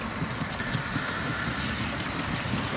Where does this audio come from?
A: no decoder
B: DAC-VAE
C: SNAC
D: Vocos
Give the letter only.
A